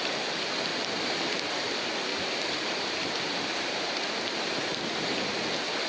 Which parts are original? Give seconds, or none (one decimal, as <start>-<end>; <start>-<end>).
0.0-0.7; 1.5-2.1; 4.8-5.9

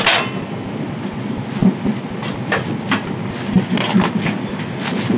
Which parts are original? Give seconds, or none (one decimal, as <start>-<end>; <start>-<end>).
0.0-5.2